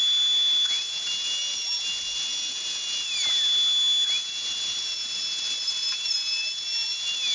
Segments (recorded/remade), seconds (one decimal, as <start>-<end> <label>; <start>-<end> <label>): 0.0-7.3 recorded